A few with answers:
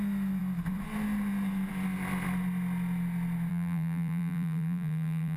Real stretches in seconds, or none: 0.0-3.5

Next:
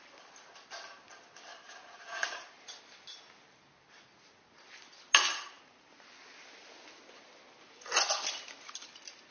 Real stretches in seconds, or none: 0.0-1.5; 2.7-5.3; 5.9-9.3

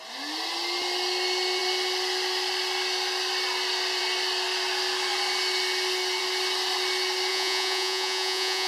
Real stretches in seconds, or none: 0.0-7.3

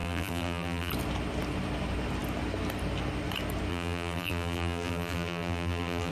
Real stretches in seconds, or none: 0.9-3.7

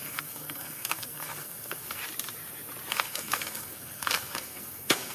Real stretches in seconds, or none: 2.0-2.9